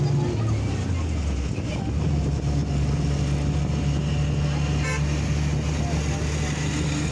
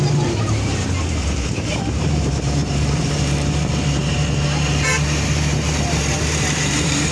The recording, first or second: first